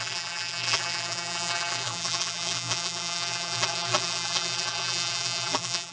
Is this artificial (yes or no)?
yes